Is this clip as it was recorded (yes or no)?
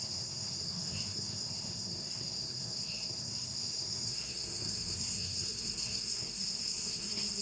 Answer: no